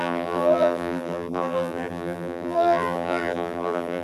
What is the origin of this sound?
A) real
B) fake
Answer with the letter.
B